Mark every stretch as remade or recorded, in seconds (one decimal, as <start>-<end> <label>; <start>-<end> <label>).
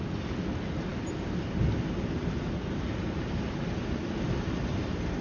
0.0-5.2 recorded